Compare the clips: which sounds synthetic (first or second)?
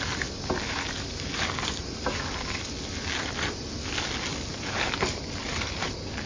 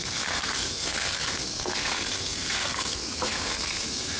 second